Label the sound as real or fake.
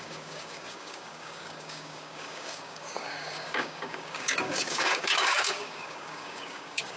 fake